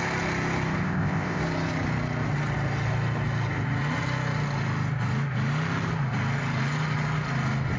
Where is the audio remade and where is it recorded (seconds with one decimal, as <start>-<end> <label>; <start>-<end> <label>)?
0.0-0.8 recorded; 0.8-1.4 remade; 1.4-7.8 recorded